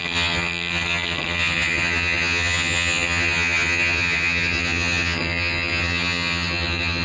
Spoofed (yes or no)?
yes